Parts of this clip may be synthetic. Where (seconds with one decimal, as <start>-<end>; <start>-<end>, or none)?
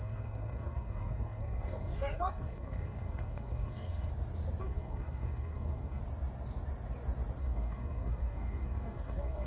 0.0-4.1; 4.6-6.0; 7.4-9.5